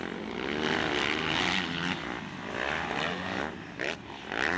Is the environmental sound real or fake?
real